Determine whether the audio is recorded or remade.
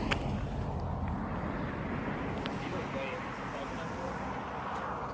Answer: recorded